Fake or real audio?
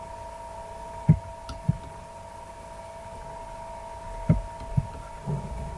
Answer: real